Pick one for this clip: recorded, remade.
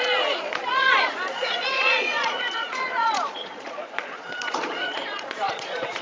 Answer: remade